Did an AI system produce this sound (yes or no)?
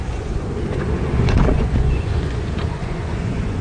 yes